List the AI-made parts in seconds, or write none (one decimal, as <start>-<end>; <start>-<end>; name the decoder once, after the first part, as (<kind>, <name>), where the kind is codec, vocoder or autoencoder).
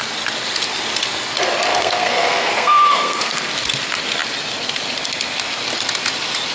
1.7-3.4 (codec, SNAC)